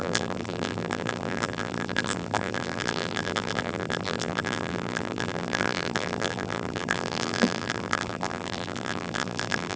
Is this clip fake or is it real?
fake